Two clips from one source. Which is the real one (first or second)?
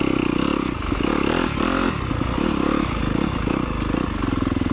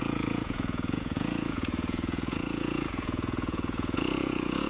first